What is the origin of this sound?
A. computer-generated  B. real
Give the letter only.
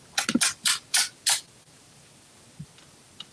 B